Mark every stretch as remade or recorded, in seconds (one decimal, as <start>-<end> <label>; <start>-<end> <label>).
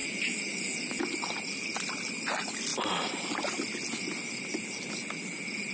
0.0-5.7 recorded